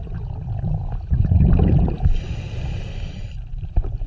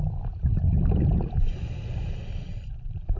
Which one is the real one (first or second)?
second